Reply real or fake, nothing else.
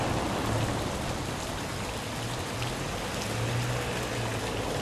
real